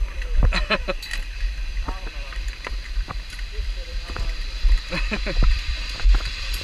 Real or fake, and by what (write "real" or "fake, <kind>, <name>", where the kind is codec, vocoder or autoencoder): fake, vocoder, BigVGAN v2